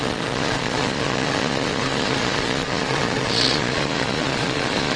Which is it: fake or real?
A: fake